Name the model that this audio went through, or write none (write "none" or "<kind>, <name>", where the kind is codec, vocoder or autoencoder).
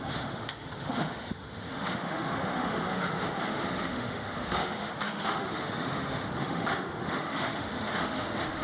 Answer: autoencoder, DAC-VAE